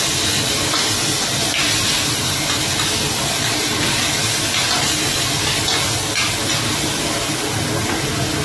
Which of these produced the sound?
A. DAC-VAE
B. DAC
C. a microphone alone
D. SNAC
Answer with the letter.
C